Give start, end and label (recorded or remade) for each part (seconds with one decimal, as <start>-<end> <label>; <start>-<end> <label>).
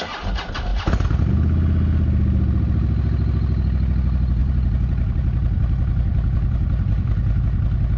0.0-0.7 recorded; 0.7-1.3 remade; 1.3-4.4 recorded; 4.4-7.4 remade; 7.4-8.0 recorded